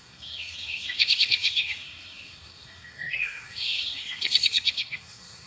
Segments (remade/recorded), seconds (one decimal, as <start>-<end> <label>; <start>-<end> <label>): 0.0-5.5 remade